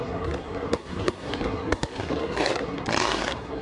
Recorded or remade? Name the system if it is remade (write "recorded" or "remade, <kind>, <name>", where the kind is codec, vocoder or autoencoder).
remade, codec, SNAC